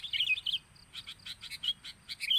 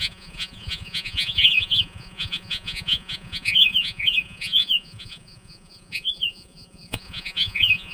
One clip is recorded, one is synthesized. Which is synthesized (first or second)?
second